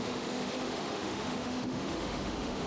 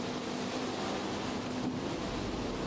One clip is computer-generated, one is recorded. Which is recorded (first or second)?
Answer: second